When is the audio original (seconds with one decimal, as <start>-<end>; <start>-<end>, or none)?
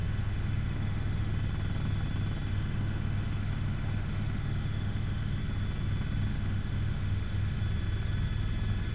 1.3-2.5; 5.4-6.3; 7.6-8.9